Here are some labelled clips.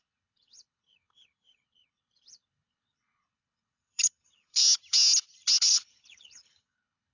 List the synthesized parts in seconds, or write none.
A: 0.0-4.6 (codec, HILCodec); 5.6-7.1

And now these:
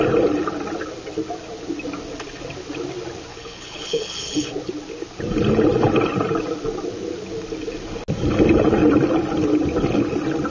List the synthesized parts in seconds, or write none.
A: 3.3-4.5 (codec, HILCodec)

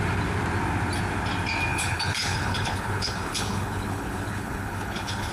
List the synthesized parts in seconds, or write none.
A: 1.7-5.3 (codec, HILCodec)

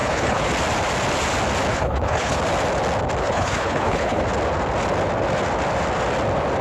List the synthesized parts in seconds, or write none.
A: 0.0-0.5 (codec, HILCodec); 1.7-2.4; 3.2-4.2

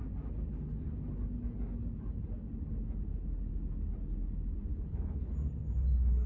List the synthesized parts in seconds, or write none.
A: 4.7-5.3 (codec, HILCodec)

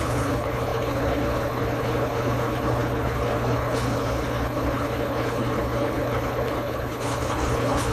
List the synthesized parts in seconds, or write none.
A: 0.0-7.9 (codec, HILCodec)